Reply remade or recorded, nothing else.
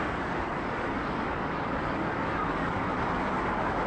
remade